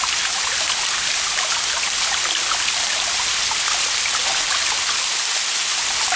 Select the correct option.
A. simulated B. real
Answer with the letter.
B